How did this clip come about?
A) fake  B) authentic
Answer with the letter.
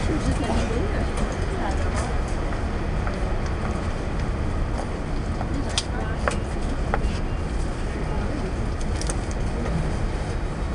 B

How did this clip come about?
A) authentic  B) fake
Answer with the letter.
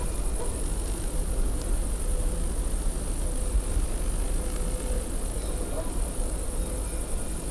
A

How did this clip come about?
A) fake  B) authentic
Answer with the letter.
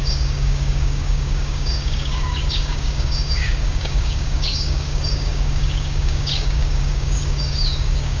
A